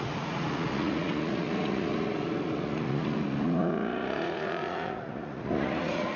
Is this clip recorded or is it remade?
remade